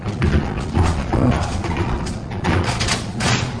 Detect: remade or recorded remade